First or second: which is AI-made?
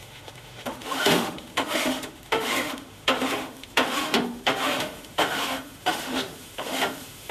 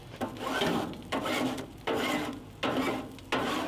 first